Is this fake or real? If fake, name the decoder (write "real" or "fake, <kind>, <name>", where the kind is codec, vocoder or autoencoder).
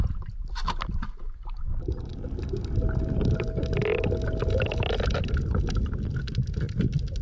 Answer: real